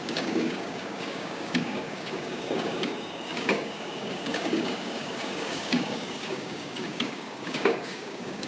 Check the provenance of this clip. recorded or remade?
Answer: remade